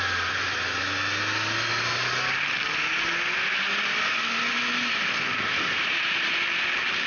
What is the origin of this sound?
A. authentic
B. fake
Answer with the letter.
A